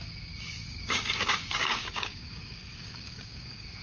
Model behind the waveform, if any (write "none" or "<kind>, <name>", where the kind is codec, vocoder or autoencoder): codec, DAC